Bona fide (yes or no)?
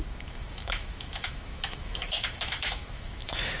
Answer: no